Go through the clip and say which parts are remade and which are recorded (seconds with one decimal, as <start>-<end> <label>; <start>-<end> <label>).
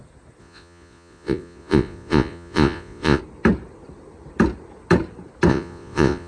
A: 0.0-0.4 recorded; 0.4-3.2 remade; 3.2-5.5 recorded; 5.5-6.3 remade